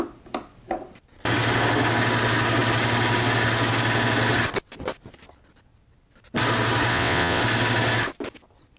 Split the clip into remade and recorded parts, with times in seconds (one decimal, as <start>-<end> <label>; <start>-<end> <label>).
0.0-6.9 recorded; 6.9-7.4 remade; 7.4-8.8 recorded